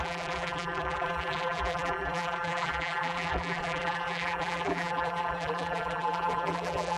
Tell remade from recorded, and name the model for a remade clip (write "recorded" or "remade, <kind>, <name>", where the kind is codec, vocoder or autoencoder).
remade, vocoder, BigVGAN v2